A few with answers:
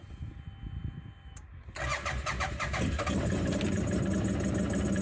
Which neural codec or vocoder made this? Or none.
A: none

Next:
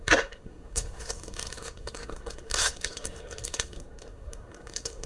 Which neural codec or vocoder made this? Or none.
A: codec, SNAC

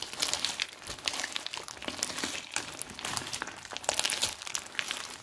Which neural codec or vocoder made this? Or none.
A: none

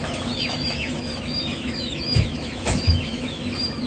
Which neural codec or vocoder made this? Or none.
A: autoencoder, DAC-VAE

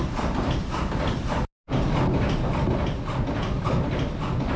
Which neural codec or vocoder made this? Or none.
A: none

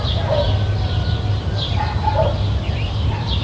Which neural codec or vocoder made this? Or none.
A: none